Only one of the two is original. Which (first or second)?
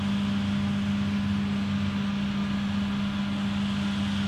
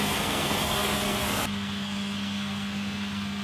first